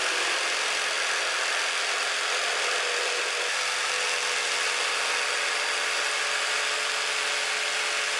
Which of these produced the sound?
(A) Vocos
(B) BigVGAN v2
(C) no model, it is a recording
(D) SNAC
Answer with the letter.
C